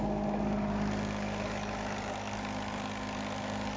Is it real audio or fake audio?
fake